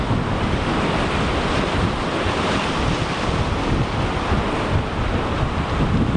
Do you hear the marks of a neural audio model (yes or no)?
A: no